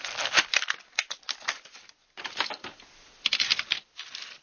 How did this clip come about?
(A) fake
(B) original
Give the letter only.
B